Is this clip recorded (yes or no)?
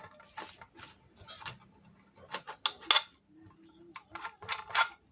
yes